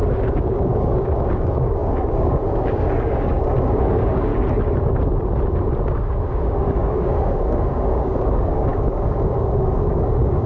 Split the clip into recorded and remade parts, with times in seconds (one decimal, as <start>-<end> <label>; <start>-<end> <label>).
0.0-4.3 remade; 4.3-5.9 recorded; 5.9-10.5 remade